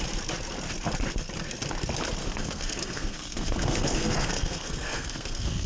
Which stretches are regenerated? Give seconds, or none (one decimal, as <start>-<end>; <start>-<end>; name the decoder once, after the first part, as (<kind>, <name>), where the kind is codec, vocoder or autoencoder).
2.2-5.7 (codec, SNAC)